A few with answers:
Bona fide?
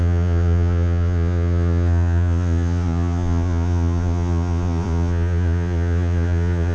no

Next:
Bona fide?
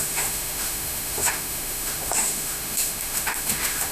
no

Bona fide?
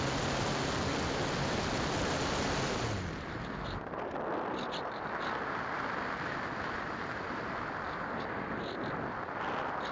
yes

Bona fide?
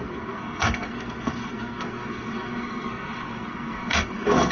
no